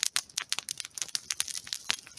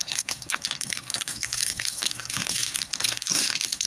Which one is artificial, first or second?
second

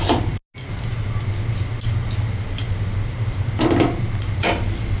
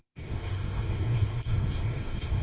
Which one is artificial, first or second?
second